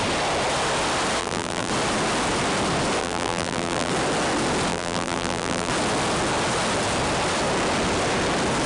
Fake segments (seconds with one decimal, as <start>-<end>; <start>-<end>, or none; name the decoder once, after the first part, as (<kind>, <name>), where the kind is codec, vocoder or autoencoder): 1.2-1.7 (vocoder, BigVGAN v2); 3.0-3.9; 4.7-5.7